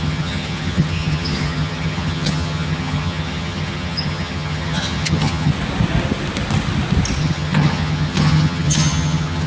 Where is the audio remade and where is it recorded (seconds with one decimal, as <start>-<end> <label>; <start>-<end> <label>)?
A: 0.0-5.5 remade; 5.5-7.2 recorded; 7.2-9.5 remade